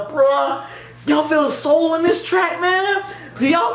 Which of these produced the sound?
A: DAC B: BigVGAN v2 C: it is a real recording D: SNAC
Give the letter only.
A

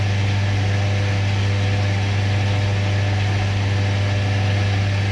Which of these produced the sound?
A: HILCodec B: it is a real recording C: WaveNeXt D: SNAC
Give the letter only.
B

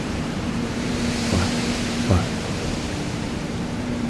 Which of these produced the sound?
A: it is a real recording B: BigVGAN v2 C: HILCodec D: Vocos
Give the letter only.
B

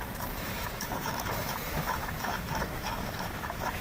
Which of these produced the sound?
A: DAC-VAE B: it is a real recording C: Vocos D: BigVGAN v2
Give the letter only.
A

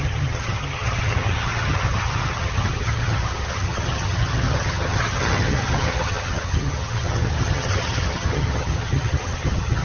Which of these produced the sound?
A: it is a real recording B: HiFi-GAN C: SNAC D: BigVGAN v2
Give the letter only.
B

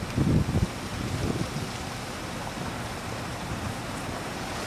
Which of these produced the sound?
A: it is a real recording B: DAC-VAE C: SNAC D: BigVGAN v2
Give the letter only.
A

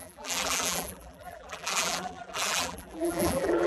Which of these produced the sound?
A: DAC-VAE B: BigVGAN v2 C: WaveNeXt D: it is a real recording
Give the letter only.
B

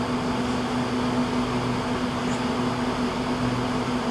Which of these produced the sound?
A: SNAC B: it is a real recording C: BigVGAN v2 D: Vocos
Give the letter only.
B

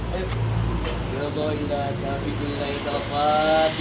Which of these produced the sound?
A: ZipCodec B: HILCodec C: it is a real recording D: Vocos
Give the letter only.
C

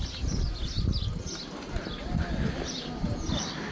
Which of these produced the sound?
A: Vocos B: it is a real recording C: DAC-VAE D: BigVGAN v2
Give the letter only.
B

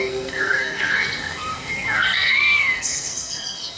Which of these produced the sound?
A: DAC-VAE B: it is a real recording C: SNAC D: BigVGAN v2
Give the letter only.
C